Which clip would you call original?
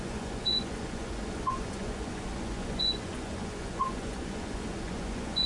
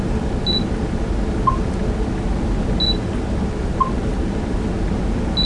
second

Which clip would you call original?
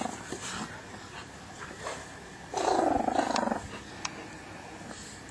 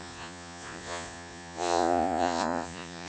first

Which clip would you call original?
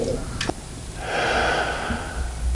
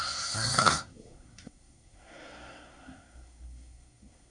first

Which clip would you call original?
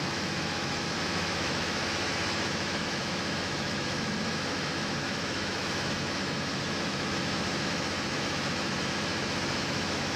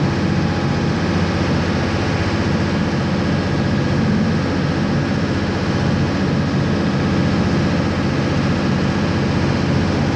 second